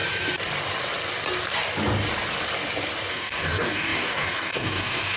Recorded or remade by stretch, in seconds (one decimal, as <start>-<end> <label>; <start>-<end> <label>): 0.0-3.1 recorded; 3.1-5.2 remade